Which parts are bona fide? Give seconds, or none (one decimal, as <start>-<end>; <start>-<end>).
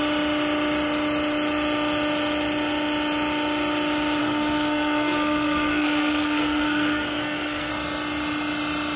0.0-4.2; 7.7-9.0